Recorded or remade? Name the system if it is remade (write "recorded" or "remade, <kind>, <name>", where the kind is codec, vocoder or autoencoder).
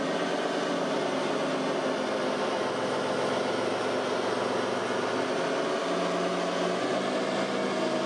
recorded